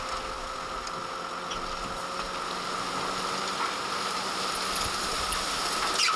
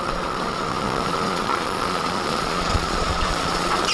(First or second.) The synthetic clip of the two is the second